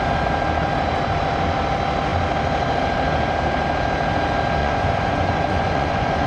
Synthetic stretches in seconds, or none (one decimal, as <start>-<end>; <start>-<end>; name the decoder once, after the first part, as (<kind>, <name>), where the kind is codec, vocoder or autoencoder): 4.6-6.3 (vocoder, Vocos)